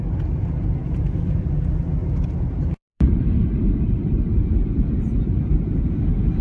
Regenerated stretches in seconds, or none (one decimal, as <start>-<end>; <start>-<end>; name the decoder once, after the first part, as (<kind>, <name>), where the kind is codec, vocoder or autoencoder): 0.8-1.4 (vocoder, BigVGAN v2); 2.0-5.8

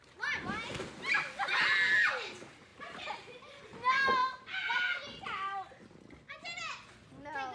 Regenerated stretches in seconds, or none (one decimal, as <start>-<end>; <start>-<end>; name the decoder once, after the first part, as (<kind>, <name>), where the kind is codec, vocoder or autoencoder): 2.7-3.4 (vocoder, BigVGAN v2); 4.2-5.2

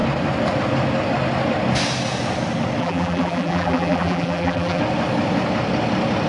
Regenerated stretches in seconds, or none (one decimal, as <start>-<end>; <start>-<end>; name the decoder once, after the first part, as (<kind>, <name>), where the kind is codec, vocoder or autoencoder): 2.8-4.8 (vocoder, BigVGAN v2)

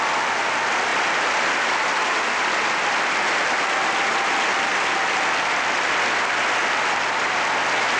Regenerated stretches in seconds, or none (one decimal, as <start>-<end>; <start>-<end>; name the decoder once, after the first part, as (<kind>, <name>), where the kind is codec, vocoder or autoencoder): none

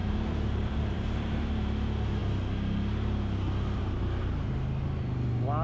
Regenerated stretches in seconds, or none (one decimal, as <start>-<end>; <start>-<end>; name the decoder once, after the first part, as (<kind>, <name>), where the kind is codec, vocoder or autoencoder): 0.0-1.3 (vocoder, BigVGAN v2)

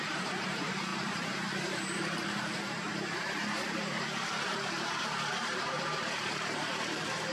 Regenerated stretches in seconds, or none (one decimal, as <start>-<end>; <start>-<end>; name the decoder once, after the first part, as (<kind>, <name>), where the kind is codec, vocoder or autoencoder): 0.0-7.3 (vocoder, BigVGAN v2)